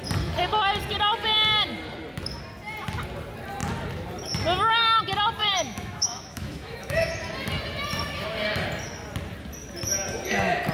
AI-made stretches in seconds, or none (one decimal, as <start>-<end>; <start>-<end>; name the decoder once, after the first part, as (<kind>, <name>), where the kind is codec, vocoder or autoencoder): 5.4-7.1 (autoencoder, DAC-VAE)